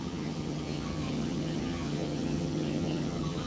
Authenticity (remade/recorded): remade